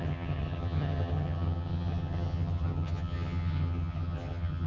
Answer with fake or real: fake